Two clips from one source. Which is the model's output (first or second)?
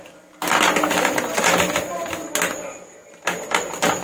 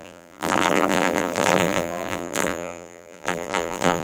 second